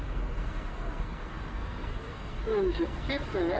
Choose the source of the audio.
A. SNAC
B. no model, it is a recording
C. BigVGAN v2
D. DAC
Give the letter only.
A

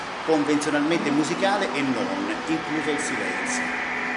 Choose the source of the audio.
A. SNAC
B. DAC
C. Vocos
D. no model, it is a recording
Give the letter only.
D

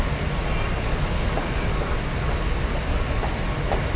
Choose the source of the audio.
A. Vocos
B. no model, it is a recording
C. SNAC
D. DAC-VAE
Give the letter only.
B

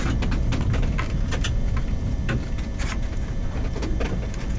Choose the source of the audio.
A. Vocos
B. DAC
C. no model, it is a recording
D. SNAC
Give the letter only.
C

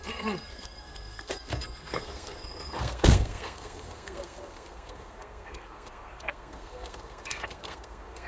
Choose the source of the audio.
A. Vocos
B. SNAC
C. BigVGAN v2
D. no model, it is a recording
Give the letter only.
B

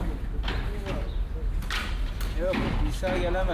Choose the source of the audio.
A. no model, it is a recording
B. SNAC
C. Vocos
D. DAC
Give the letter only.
A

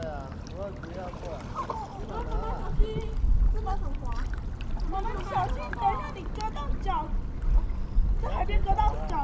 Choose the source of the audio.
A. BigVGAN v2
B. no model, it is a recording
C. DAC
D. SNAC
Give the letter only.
B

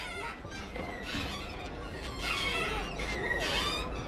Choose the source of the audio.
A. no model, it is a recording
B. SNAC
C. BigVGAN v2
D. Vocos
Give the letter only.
C